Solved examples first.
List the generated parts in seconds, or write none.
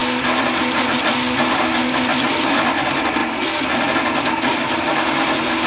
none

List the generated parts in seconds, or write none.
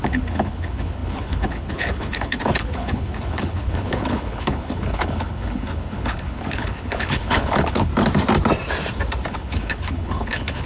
0.0-7.9 (codec, HILCodec); 9.3-10.7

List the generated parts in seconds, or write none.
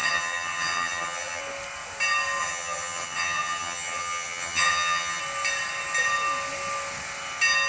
0.0-1.4 (vocoder, HiFi-GAN); 2.4-5.2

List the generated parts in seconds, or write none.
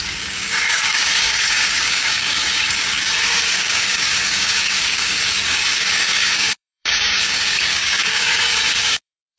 0.0-9.4 (codec, DAC)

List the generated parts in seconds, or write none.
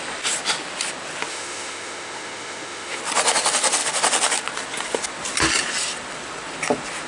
1.3-3.0 (autoencoder, DAC-VAE)